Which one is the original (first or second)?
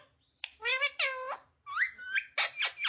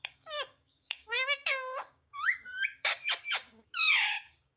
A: first